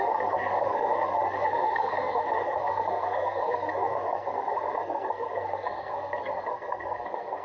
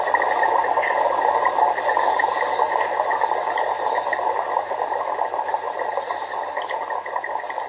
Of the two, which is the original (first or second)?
second